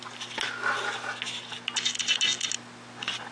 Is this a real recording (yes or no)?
yes